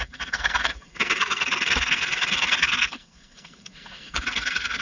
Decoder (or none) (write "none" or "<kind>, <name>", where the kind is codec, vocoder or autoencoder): codec, SNAC